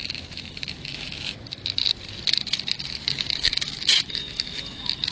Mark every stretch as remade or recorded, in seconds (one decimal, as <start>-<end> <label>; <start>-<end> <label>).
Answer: 0.0-1.8 remade; 1.8-2.8 recorded; 2.8-5.1 remade